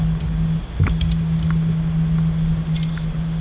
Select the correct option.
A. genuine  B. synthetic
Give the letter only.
A